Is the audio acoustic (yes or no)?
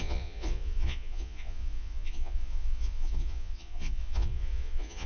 no